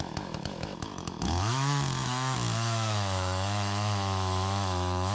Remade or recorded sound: remade